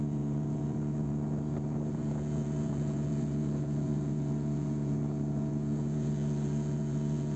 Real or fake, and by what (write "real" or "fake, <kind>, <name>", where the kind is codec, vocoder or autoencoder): fake, vocoder, Vocos